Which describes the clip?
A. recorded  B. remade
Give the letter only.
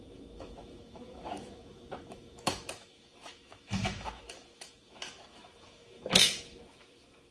B